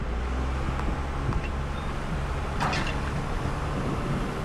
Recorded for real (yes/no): yes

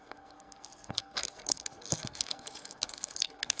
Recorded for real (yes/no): no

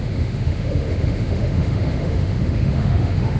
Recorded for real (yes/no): no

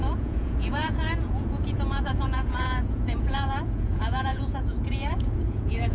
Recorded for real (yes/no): no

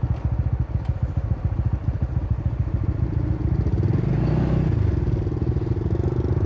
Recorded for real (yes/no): yes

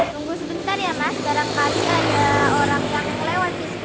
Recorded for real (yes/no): no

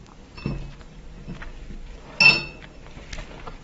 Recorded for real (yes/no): yes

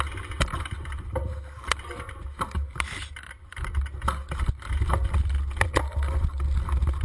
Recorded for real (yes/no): yes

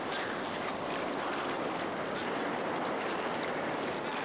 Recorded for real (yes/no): yes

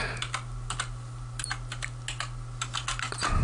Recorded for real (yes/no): yes